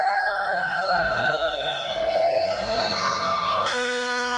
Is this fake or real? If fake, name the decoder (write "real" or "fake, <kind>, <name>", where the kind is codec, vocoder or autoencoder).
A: fake, codec, SNAC